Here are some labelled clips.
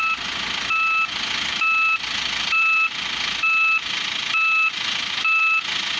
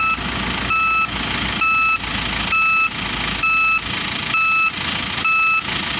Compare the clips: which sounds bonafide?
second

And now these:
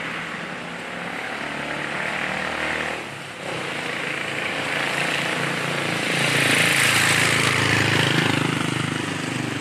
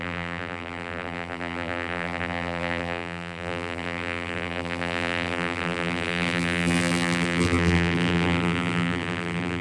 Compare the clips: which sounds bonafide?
first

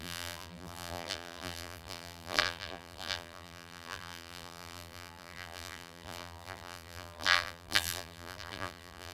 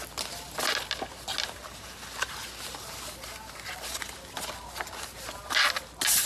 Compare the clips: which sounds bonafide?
second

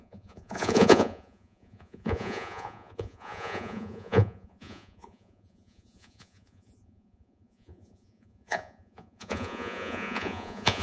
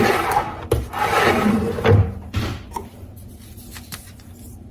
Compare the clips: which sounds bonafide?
second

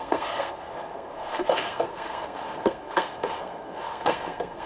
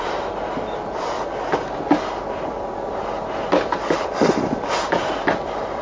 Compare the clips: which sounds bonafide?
second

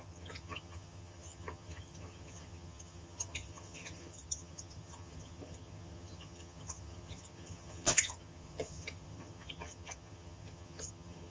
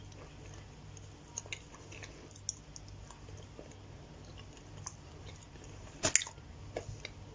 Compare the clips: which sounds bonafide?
second